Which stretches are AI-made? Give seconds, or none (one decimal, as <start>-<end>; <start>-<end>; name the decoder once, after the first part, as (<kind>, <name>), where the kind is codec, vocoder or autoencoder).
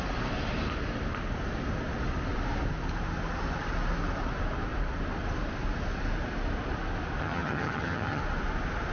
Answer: 7.2-8.2 (vocoder, HiFi-GAN)